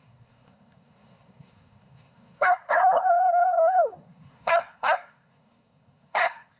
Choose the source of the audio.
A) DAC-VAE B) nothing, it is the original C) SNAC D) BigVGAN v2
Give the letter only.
C